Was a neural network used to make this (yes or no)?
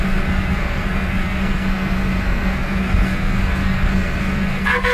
yes